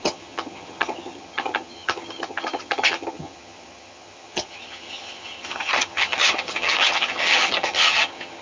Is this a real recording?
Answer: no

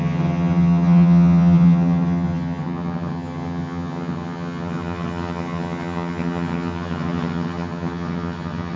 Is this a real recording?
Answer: no